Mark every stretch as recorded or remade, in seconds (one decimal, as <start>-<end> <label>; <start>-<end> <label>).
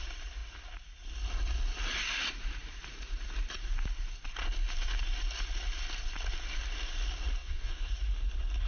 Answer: 0.0-7.4 recorded; 7.4-7.9 remade; 7.9-8.7 recorded